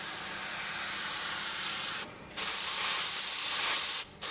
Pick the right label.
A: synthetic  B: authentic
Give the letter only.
A